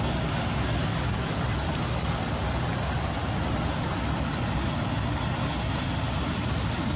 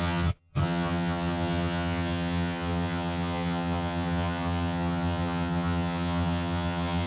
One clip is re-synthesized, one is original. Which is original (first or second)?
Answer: first